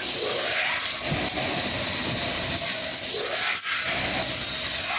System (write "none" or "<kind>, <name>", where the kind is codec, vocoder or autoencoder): none